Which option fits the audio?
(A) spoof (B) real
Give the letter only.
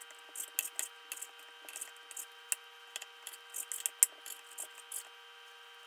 B